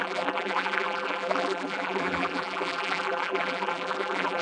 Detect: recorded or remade remade